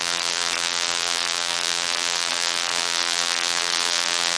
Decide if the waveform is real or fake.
fake